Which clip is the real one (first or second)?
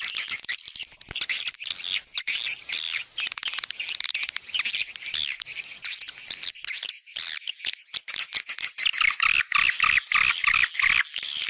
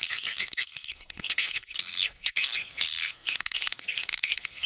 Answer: first